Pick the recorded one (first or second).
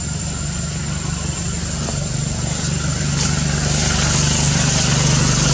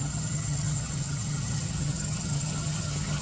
first